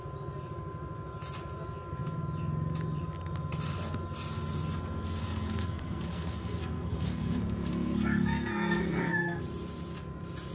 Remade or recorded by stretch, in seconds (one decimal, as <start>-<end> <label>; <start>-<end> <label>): 0.0-5.2 recorded; 5.2-9.4 remade; 9.4-10.5 recorded